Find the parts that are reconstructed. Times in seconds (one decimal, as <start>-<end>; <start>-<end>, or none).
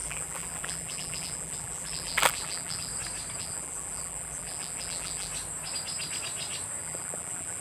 0.0-2.9; 3.4-5.3; 6.8-7.6